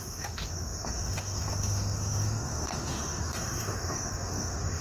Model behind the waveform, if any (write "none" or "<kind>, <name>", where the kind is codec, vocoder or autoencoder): autoencoder, DAC-VAE